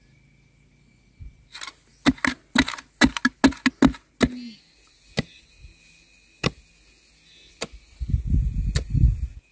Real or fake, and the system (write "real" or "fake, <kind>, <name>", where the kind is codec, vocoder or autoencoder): real